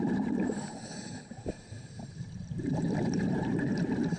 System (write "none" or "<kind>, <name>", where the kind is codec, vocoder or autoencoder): vocoder, BigVGAN v2